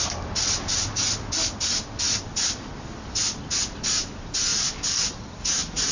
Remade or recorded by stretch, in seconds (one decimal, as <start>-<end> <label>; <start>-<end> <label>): 0.0-5.9 recorded